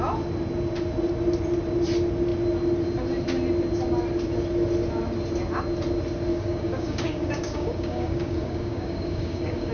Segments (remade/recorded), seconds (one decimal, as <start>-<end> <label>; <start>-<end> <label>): 0.0-6.3 recorded; 6.3-9.7 remade